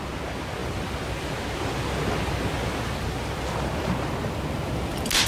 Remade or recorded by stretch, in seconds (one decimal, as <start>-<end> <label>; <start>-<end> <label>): 0.0-5.3 recorded